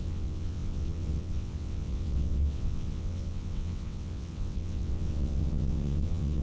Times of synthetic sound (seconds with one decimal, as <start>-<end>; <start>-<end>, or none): 0.0-6.4